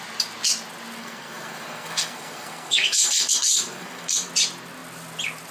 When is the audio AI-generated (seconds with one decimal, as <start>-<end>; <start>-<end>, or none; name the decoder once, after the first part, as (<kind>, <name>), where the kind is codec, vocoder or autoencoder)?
1.0-4.3 (codec, SNAC)